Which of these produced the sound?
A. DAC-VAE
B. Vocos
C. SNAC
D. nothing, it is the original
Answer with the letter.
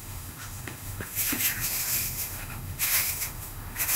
A